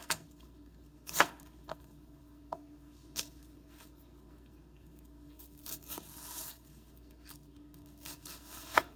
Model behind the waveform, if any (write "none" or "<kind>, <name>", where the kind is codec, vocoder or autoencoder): codec, SNAC